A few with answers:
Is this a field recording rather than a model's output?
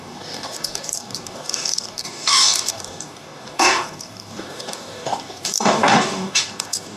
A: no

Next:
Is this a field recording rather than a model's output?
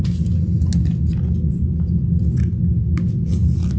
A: yes